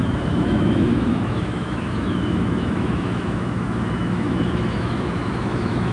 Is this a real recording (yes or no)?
no